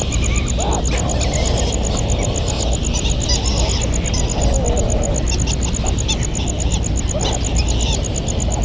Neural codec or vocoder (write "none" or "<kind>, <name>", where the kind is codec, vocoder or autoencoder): none